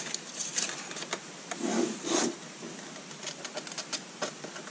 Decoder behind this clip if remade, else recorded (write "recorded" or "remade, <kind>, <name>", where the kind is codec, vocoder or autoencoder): recorded